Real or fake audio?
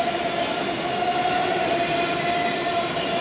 real